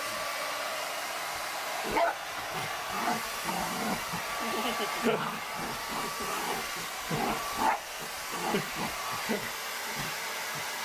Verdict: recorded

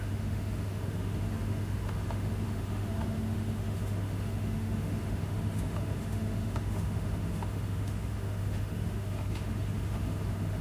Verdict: remade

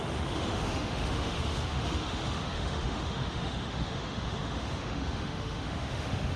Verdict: remade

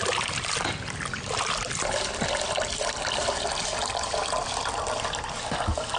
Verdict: recorded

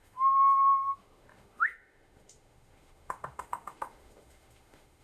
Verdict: remade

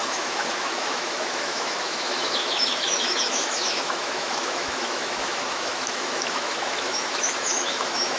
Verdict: remade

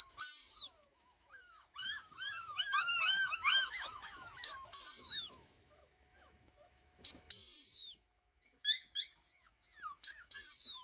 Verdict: remade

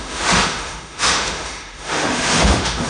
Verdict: remade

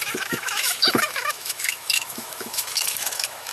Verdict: remade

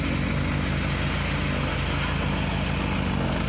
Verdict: recorded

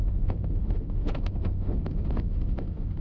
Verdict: remade